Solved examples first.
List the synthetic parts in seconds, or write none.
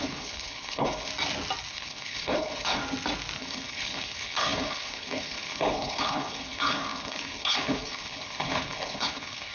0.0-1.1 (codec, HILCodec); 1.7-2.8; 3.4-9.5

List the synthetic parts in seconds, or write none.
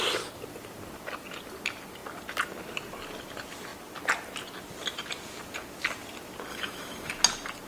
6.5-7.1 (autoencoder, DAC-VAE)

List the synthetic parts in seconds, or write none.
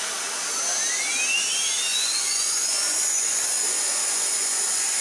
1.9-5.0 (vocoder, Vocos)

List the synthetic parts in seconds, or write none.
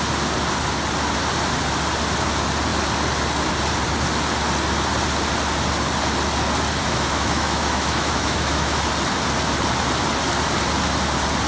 6.8-8.9 (autoencoder, DAC-VAE)